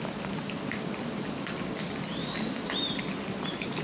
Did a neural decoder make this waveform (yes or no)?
no